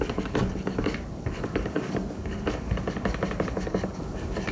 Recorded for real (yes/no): no